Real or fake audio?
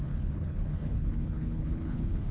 fake